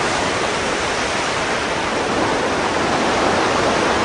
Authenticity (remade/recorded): recorded